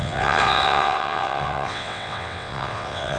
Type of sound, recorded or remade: remade